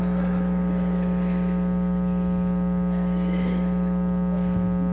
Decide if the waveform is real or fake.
real